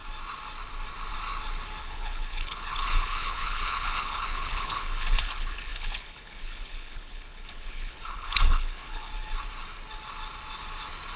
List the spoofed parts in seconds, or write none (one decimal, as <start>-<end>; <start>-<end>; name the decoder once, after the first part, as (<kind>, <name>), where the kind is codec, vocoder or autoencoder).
1.8-9.1 (codec, HILCodec)